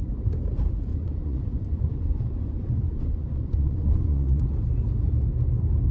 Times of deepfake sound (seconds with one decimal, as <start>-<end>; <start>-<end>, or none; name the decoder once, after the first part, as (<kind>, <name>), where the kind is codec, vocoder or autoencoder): 0.9-4.4 (vocoder, Vocos)